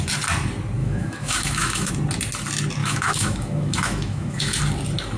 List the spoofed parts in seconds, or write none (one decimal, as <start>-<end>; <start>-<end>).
0.8-1.9; 2.8-4.6